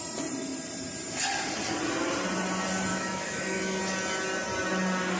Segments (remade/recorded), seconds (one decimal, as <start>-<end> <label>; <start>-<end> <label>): 0.0-2.9 recorded; 2.9-3.8 remade; 3.8-5.2 recorded